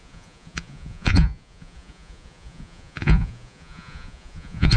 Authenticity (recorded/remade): remade